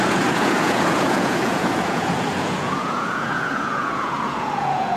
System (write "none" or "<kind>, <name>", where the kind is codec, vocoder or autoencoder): vocoder, Vocos